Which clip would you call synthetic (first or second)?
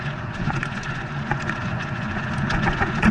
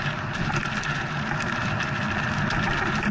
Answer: first